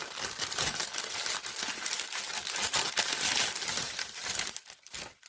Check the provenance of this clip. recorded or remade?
recorded